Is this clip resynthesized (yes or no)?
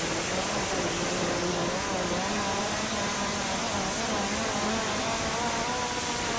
no